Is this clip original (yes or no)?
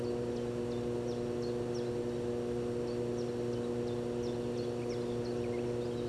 yes